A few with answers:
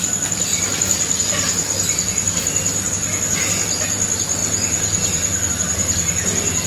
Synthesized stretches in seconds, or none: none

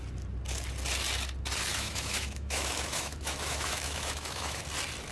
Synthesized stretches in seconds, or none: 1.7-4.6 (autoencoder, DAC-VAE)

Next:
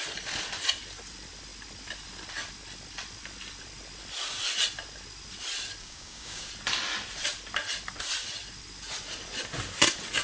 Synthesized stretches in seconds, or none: 5.8-6.5 (codec, DAC)